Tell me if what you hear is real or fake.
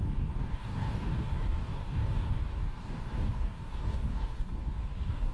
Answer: fake